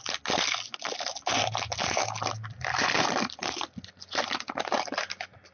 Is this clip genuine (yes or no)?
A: yes